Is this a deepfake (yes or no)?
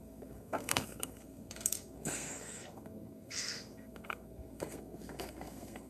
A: yes